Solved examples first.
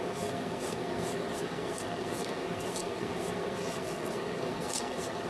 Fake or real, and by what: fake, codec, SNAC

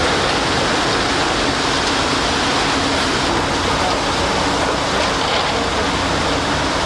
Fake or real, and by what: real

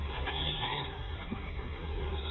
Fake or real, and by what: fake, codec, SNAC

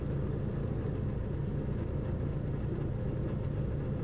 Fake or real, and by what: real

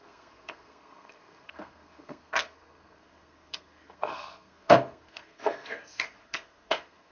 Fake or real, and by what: fake, codec, SNAC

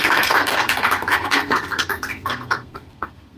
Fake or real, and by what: fake, codec, SNAC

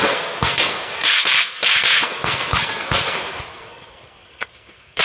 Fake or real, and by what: fake, codec, SNAC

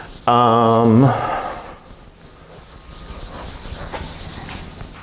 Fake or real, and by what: real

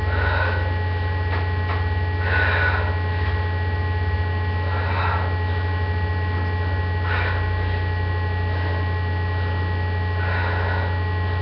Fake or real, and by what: real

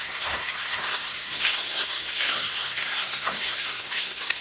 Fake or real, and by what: fake, codec, SNAC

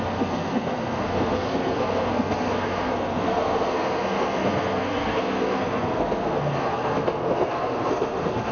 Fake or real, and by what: fake, codec, SNAC